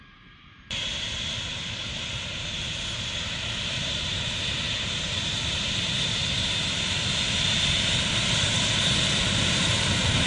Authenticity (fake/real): fake